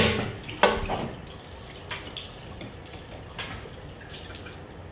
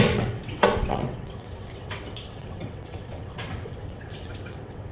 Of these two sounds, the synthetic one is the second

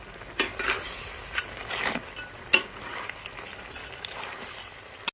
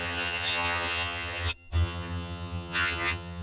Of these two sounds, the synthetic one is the second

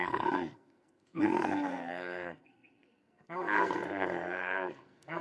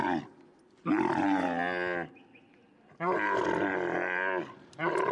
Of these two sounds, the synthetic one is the first